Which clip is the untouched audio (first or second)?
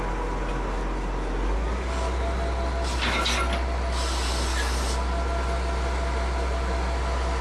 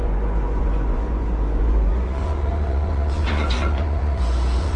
first